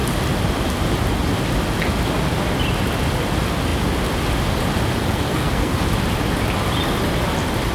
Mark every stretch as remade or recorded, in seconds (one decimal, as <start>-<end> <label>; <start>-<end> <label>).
0.0-5.0 recorded; 5.0-5.8 remade; 5.8-7.7 recorded